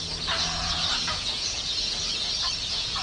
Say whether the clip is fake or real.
fake